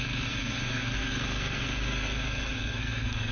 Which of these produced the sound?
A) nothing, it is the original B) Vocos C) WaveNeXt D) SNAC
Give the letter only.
D